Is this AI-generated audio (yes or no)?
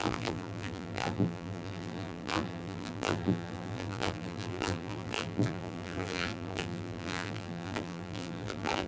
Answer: yes